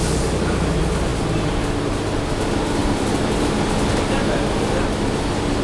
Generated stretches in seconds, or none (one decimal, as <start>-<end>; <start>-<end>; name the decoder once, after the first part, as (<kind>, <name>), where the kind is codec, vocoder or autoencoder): 2.8-4.4 (vocoder, BigVGAN v2)